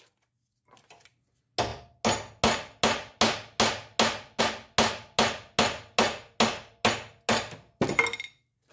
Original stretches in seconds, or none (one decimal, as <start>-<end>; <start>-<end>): 0.0-8.7